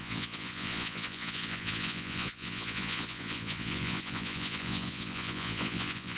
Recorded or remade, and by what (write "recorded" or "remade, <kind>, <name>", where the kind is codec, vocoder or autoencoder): remade, vocoder, Vocos